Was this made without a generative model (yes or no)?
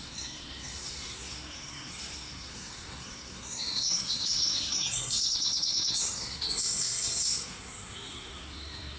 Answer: no